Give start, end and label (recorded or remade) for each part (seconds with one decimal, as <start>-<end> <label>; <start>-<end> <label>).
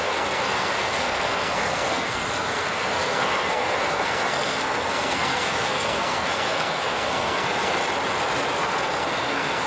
0.0-7.8 remade; 7.8-8.6 recorded; 8.6-9.7 remade